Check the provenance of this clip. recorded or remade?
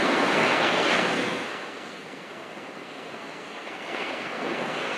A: remade